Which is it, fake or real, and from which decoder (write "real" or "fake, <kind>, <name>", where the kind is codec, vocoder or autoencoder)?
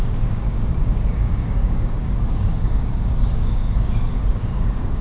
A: fake, codec, DAC